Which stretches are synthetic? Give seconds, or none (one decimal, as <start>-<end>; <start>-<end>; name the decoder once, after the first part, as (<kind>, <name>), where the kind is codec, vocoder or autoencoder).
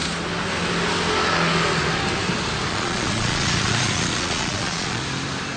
2.7-5.0 (vocoder, Vocos)